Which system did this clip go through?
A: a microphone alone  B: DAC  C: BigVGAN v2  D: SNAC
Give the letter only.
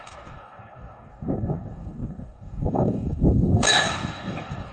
B